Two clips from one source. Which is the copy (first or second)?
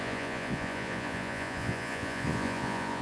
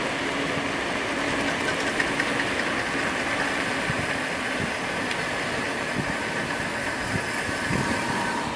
first